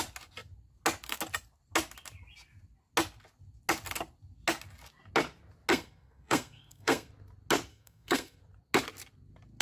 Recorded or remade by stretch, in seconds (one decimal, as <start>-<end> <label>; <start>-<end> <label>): 0.0-5.7 recorded; 5.7-7.1 remade; 7.1-7.7 recorded; 7.7-8.4 remade; 8.4-9.6 recorded